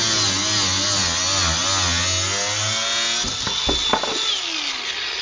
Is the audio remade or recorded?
recorded